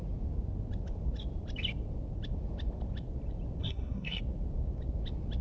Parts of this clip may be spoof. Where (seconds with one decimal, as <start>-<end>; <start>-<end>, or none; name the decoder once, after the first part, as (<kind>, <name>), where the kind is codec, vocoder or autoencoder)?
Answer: 3.6-4.2 (codec, SNAC)